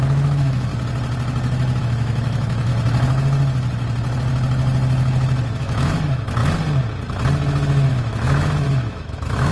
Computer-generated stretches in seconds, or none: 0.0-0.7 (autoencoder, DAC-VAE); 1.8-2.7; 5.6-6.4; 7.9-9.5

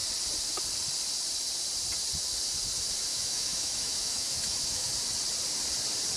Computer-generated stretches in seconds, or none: 3.1-4.9 (autoencoder, DAC-VAE)

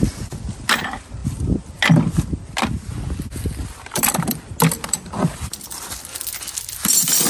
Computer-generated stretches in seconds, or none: none

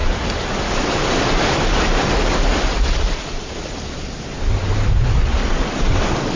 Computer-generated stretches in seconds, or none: none

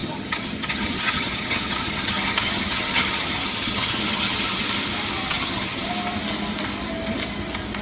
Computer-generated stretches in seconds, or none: 0.0-4.6 (vocoder, HiFi-GAN); 5.2-5.9